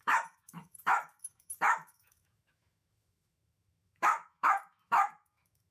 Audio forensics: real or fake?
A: fake